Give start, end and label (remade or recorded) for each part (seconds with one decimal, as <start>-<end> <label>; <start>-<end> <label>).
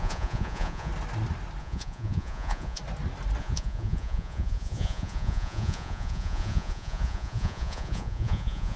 0.0-0.9 remade; 0.9-1.6 recorded; 1.6-2.8 remade; 2.8-3.4 recorded; 3.4-8.8 remade